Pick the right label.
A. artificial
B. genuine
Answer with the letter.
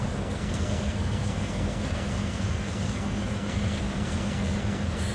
A